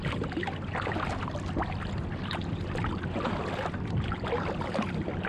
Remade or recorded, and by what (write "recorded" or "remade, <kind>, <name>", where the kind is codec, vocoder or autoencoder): recorded